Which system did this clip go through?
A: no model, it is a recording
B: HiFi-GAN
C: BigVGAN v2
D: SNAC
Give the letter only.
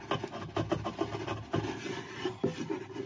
A